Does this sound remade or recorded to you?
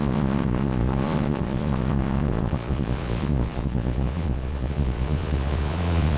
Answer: remade